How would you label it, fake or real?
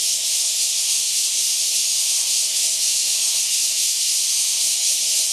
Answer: fake